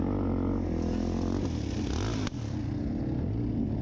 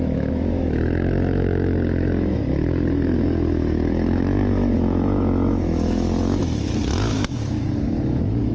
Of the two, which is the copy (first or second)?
second